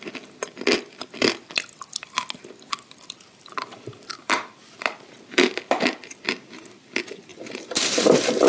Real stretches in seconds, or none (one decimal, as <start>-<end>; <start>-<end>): 0.0-3.3; 6.3-7.3